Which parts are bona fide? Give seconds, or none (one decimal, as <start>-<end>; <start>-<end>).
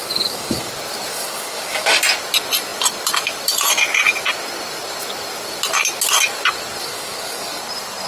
0.7-1.1; 2.0-6.8; 7.6-8.1